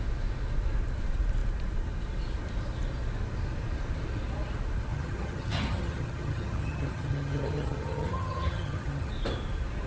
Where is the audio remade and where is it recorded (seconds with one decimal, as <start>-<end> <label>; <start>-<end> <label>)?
0.0-4.9 recorded; 4.9-9.1 remade; 9.1-9.9 recorded

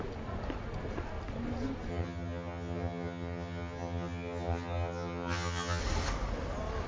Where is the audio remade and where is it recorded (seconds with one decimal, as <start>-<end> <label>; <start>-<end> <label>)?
0.0-1.9 recorded; 1.9-5.8 remade; 5.8-6.9 recorded

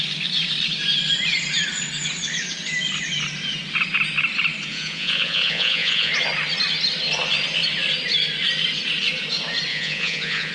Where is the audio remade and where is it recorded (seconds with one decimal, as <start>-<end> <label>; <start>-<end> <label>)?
0.0-4.7 recorded; 4.7-6.1 remade; 6.1-9.7 recorded; 9.7-10.5 remade

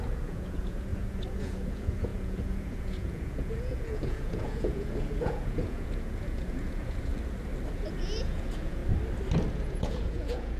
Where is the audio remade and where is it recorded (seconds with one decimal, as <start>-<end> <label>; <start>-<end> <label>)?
0.0-7.1 remade; 7.1-7.7 recorded; 7.7-8.8 remade; 8.8-9.5 recorded; 9.5-10.6 remade

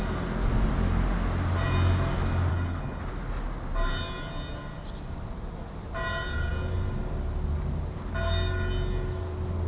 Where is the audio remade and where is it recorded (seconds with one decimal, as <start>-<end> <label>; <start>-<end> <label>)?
0.0-2.5 recorded; 2.5-3.0 remade; 3.0-9.7 recorded

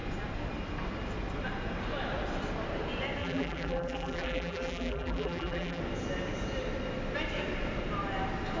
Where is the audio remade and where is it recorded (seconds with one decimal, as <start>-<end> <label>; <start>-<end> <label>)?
0.0-3.2 recorded; 3.2-5.8 remade; 5.8-8.6 recorded

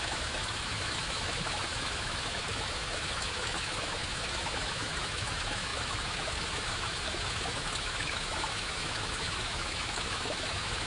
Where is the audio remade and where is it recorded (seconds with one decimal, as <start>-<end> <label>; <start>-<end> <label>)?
0.0-10.9 remade

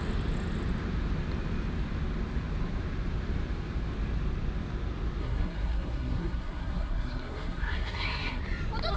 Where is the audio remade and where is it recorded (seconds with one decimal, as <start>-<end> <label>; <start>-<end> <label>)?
0.0-5.2 recorded; 5.2-8.4 remade; 8.4-9.0 recorded